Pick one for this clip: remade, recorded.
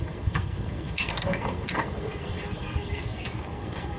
remade